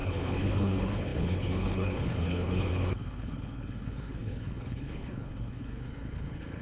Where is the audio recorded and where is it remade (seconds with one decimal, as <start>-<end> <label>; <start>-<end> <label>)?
0.0-6.6 remade